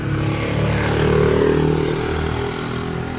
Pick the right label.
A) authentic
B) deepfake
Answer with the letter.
A